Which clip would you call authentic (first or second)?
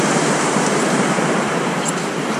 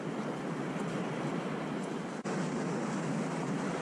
second